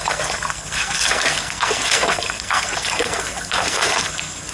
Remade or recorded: remade